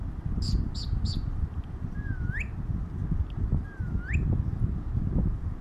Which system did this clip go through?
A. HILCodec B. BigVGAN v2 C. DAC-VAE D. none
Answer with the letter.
D